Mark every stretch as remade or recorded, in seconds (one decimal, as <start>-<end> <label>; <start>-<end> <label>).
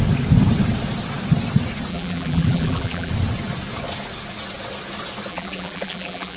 0.0-1.9 recorded; 1.9-3.1 remade; 3.1-5.3 recorded; 5.3-6.4 remade